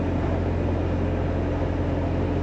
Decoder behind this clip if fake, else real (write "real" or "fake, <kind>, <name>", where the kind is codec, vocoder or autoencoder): real